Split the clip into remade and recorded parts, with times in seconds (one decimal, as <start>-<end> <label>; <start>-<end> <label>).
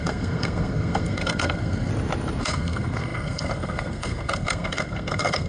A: 0.0-1.9 remade; 1.9-2.4 recorded; 2.4-5.5 remade